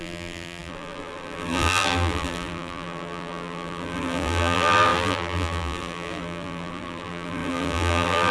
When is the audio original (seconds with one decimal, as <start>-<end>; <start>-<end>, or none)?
none